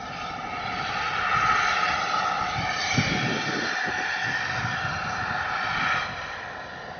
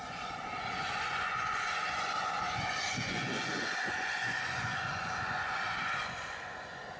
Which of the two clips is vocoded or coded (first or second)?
second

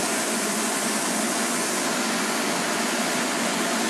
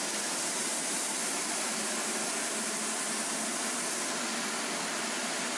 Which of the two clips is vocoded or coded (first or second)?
first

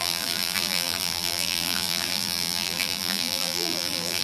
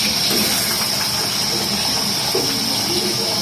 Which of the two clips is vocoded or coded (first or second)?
first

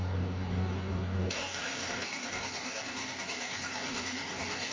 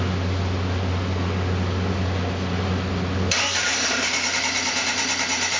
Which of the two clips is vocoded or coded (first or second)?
first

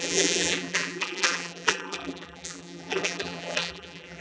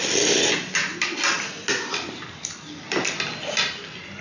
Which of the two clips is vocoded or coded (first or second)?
first